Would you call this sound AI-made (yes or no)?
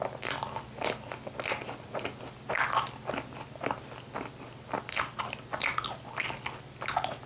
no